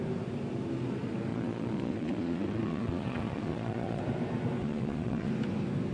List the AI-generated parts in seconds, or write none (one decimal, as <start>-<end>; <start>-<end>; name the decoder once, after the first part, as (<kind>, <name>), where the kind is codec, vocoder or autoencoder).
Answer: 1.3-4.0 (vocoder, Vocos); 4.6-5.3